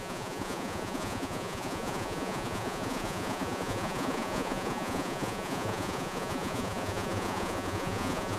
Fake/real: fake